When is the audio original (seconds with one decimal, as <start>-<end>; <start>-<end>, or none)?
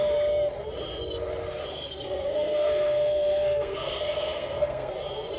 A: 0.0-1.7; 4.9-5.4